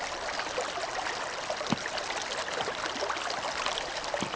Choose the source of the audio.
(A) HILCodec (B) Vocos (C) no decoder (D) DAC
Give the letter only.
C